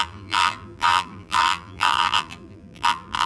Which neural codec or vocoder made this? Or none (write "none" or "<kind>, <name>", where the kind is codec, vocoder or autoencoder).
vocoder, BigVGAN v2